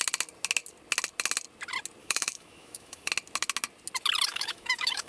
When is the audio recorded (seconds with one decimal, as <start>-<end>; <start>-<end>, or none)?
0.0-2.0; 3.1-4.3